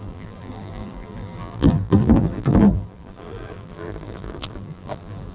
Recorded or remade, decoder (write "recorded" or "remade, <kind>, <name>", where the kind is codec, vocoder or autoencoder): remade, vocoder, BigVGAN v2